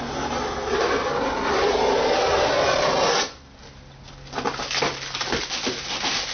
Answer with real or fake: real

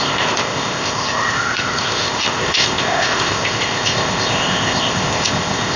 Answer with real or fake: fake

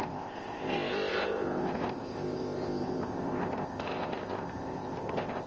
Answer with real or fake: fake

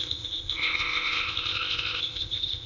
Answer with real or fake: fake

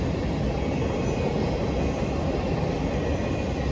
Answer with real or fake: real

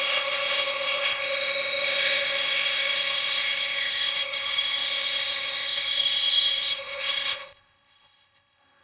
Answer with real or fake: fake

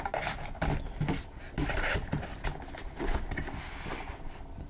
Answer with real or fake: real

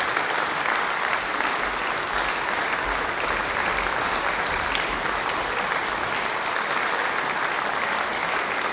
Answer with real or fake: real